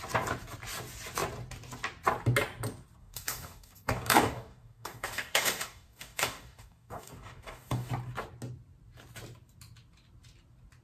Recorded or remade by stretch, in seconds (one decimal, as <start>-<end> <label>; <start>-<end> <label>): 0.0-3.0 recorded; 3.0-7.9 remade; 7.9-10.8 recorded